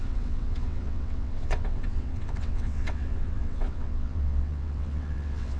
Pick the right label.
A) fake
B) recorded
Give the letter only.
A